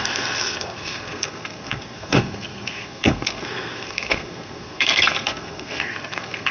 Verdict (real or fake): fake